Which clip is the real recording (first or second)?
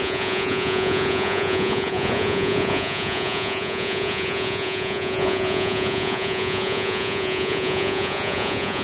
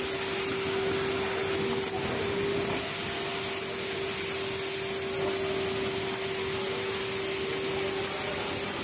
second